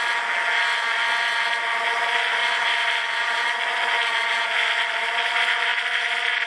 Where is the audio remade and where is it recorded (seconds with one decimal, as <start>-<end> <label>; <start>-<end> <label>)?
0.0-2.4 recorded; 2.4-3.7 remade; 3.7-6.5 recorded